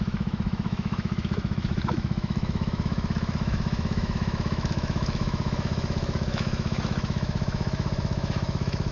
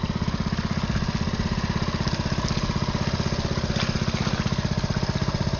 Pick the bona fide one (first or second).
second